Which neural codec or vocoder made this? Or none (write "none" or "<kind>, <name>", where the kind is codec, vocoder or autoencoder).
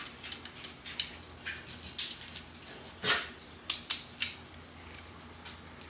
none